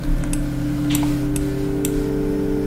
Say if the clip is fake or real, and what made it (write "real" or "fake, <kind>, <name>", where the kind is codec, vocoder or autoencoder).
real